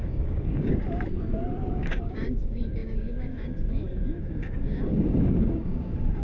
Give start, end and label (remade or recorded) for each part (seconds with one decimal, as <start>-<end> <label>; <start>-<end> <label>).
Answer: 0.0-0.7 remade; 0.7-1.7 recorded; 1.7-6.2 remade